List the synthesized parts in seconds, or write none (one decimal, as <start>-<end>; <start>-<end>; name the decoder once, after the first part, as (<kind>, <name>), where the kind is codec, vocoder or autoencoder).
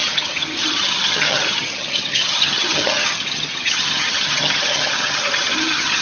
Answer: 0.0-6.0 (vocoder, HiFi-GAN)